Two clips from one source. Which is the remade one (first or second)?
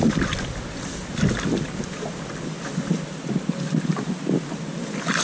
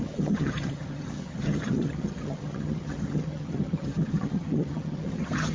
second